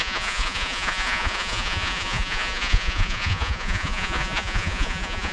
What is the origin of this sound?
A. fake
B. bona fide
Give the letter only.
A